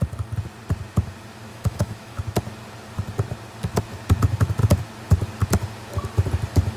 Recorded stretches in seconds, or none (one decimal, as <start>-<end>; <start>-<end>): 0.0-1.5; 2.2-6.8